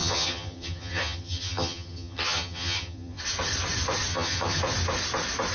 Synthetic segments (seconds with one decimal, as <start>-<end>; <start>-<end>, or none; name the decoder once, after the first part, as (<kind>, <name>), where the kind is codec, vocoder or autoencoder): 0.0-3.2 (vocoder, HiFi-GAN); 4.1-4.6